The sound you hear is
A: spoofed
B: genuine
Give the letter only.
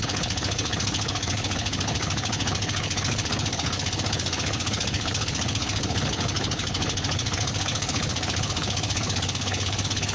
A